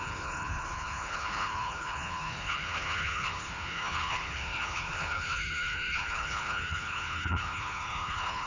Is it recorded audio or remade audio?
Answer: remade